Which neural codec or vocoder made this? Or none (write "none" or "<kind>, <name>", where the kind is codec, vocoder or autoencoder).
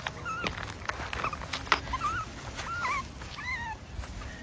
none